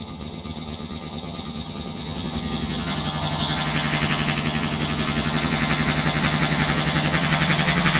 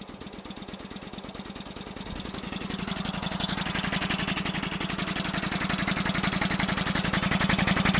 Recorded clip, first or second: second